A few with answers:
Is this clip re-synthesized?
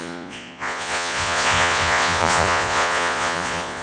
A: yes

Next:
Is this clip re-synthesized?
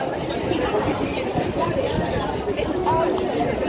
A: no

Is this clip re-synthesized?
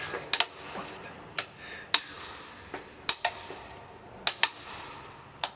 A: no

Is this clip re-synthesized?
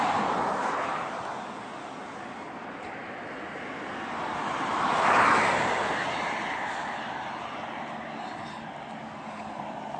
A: no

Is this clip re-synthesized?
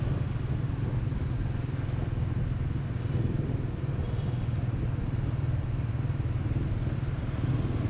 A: no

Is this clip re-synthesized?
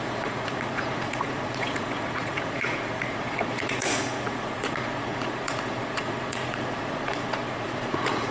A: yes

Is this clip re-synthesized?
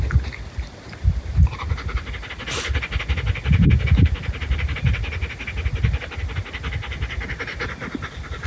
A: no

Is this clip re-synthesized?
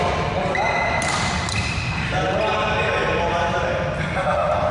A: no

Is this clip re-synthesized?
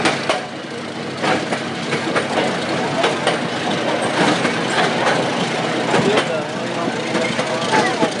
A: no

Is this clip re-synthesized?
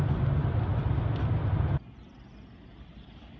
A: no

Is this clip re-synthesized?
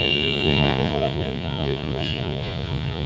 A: yes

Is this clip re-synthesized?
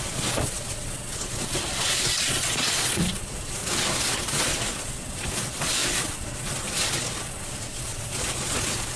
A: yes